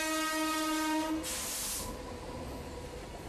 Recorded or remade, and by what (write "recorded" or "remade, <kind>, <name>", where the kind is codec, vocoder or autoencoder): recorded